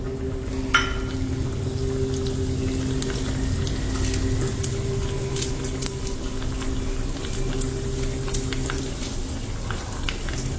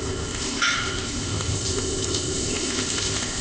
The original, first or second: first